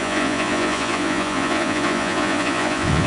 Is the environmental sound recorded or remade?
remade